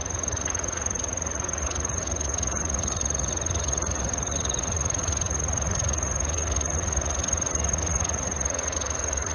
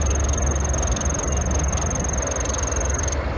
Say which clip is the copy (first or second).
first